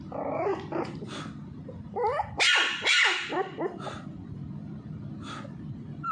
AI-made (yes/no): no